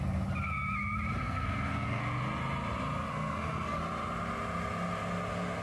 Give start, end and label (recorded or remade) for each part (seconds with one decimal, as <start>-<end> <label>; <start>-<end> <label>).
0.0-1.2 recorded; 1.2-2.0 remade; 2.0-3.1 recorded; 3.1-3.8 remade; 3.8-5.6 recorded